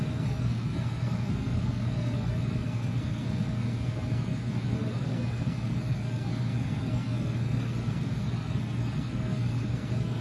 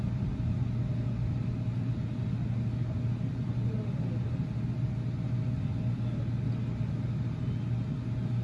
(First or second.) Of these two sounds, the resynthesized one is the first